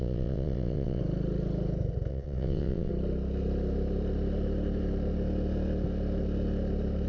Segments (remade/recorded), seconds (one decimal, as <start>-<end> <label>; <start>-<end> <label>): 0.0-1.0 remade; 1.0-2.1 recorded; 2.1-2.9 remade; 2.9-7.1 recorded